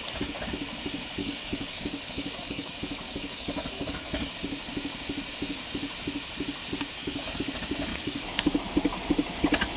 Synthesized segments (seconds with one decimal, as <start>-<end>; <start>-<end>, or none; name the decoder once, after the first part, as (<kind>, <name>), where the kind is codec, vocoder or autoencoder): 1.2-4.3 (codec, DAC); 7.0-7.5; 7.9-8.6